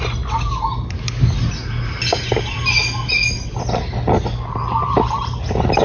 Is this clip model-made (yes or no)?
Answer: no